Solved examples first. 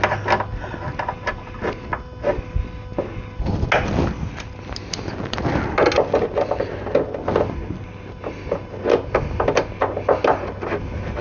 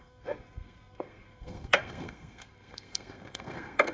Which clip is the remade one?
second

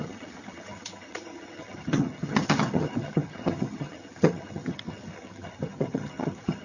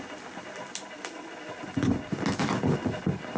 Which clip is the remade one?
first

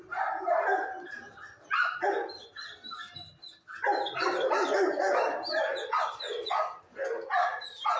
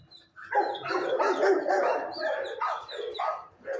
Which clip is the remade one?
second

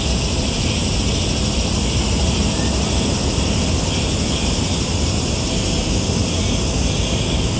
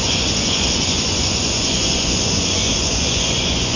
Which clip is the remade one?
second